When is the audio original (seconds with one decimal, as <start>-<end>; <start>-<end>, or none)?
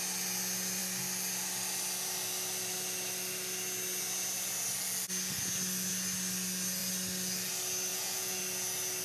0.0-7.9; 8.4-9.0